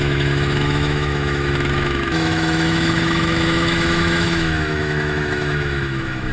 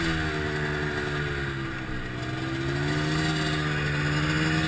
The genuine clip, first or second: second